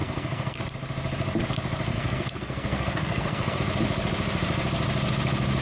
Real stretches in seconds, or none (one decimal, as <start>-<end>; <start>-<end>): 0.6-1.9; 3.6-5.6